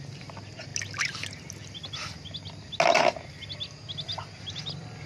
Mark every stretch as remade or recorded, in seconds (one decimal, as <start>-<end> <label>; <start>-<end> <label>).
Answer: 0.0-5.1 recorded